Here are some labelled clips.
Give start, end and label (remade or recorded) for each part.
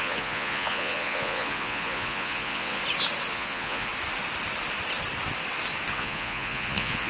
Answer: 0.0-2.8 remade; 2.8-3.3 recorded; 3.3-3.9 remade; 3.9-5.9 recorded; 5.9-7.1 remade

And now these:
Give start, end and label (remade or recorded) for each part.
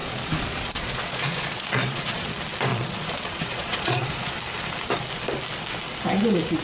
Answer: 0.0-2.3 remade; 2.3-2.7 recorded; 2.7-4.3 remade; 4.3-6.6 recorded